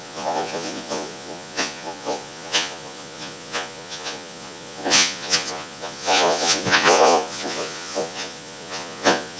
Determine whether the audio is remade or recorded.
remade